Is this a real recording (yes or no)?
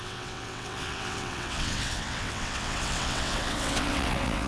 no